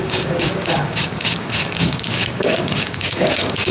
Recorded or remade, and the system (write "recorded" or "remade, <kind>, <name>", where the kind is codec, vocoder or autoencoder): remade, codec, DAC